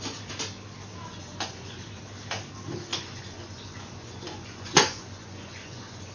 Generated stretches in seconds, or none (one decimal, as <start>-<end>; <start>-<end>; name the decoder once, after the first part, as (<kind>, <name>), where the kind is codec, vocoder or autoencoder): 1.1-2.0 (vocoder, Vocos); 2.9-6.1